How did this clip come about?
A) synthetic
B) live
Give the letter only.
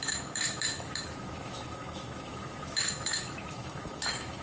A